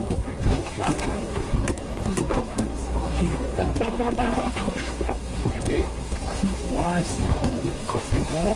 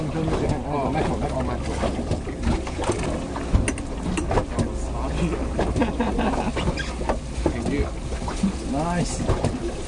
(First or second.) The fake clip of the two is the first